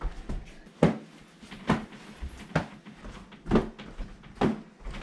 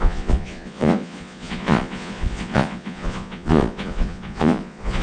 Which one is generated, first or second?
second